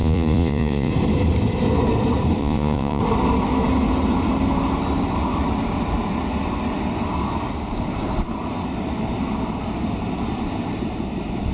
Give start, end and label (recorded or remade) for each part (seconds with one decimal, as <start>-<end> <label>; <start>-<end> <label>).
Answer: 0.0-0.9 remade; 0.9-2.4 recorded; 2.4-3.0 remade; 3.0-11.5 recorded